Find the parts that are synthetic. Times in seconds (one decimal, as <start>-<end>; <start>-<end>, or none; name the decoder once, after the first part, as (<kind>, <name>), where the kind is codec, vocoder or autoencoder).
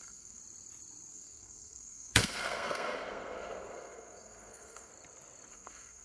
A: 0.0-0.4 (codec, SNAC); 1.1-4.9; 5.5-6.0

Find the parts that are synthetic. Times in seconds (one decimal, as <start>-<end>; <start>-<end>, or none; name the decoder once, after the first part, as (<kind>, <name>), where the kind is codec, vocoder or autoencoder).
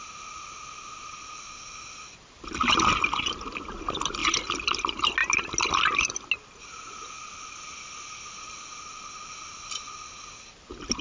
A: 4.2-4.8 (vocoder, BigVGAN v2)